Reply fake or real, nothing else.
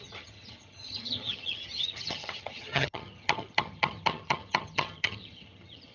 fake